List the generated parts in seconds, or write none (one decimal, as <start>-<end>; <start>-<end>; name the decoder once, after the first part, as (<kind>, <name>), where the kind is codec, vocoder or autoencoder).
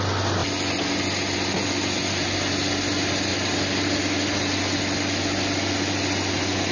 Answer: none